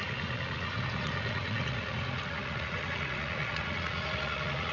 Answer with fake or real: fake